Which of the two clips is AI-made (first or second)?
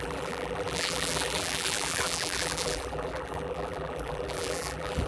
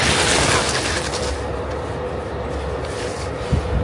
first